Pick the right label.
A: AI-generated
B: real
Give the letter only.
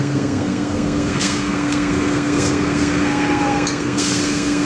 A